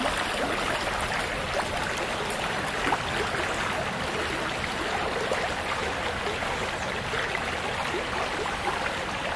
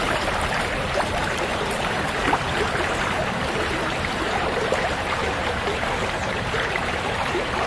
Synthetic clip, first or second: second